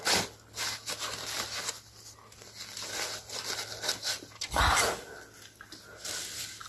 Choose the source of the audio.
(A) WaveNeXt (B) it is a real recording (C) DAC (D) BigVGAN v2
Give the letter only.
B